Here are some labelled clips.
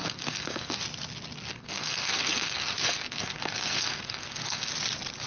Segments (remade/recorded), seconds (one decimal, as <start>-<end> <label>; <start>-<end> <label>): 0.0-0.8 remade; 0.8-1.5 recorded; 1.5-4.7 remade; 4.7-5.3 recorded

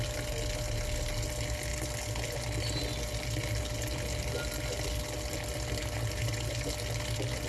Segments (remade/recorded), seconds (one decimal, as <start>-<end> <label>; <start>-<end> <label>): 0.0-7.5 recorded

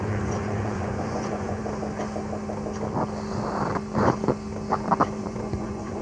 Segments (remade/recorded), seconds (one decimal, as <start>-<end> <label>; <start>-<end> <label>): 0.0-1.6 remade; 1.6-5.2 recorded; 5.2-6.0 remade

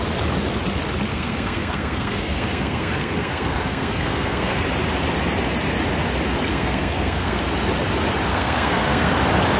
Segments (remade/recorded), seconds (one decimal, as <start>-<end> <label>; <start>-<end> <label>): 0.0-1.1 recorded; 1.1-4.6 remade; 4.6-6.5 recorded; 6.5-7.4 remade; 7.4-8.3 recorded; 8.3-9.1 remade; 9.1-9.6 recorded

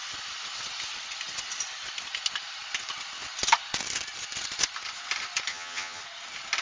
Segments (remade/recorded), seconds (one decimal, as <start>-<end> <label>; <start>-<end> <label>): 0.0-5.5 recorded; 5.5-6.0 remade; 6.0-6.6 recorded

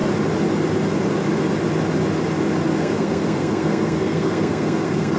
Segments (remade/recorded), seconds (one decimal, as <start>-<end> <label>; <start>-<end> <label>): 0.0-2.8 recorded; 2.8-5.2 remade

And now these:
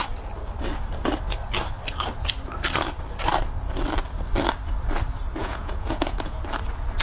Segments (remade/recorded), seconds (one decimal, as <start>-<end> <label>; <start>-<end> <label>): 0.0-5.4 recorded; 5.4-6.4 remade; 6.4-7.0 recorded